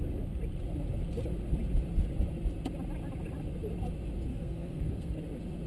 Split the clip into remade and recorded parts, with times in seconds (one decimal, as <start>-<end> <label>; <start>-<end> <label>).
0.0-4.3 recorded; 4.3-5.2 remade; 5.2-5.7 recorded